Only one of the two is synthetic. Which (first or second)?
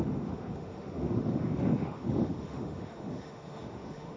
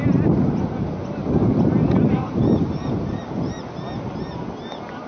first